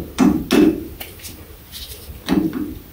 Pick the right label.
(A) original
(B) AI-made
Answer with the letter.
A